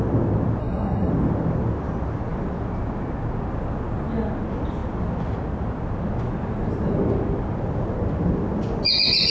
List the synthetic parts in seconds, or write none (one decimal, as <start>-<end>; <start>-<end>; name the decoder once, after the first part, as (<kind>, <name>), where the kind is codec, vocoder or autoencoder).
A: 0.6-1.1 (codec, SNAC)